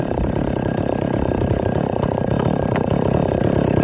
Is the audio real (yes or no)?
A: no